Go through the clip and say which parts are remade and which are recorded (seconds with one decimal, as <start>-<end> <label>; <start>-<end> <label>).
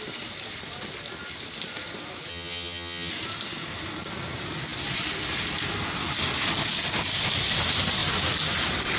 0.0-2.3 recorded; 2.3-3.1 remade; 3.1-9.0 recorded